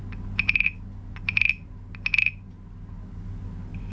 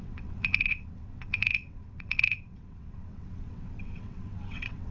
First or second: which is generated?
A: second